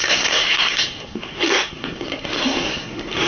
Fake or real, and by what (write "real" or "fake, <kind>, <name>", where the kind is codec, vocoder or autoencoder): fake, codec, SNAC